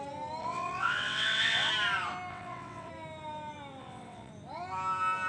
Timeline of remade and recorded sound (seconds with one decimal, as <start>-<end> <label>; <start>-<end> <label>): 0.0-0.4 recorded; 0.4-1.7 remade; 1.7-2.3 recorded; 2.3-2.9 remade; 2.9-3.8 recorded; 3.8-4.3 remade; 4.3-5.3 recorded